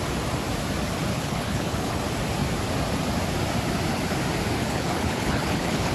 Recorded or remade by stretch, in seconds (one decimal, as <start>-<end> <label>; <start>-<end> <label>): 0.0-1.1 recorded; 1.1-2.0 remade; 2.0-4.6 recorded; 4.6-5.9 remade